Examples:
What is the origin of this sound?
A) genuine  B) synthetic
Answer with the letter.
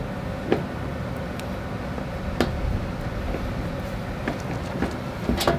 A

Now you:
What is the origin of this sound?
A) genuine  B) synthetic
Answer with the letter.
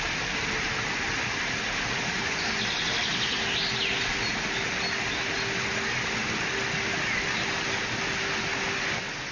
A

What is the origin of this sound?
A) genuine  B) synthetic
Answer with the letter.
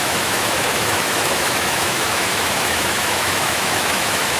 B